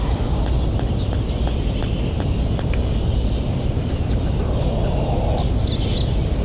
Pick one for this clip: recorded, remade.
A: recorded